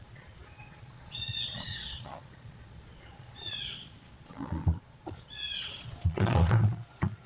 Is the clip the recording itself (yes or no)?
no